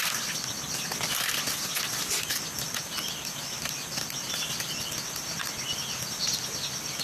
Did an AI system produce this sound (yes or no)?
no